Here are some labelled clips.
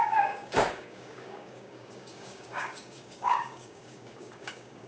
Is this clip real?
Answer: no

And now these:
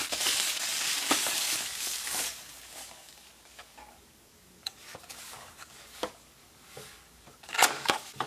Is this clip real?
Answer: no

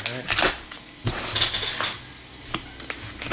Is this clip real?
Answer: yes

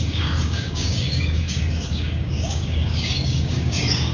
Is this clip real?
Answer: no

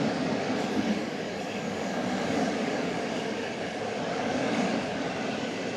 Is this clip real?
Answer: no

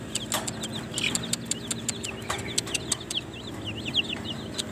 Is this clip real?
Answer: yes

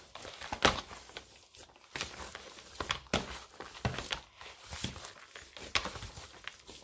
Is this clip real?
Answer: yes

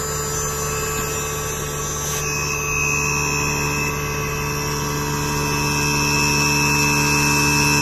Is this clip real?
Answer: yes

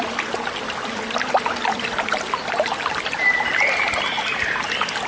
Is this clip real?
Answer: yes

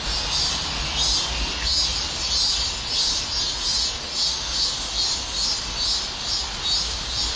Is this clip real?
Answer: yes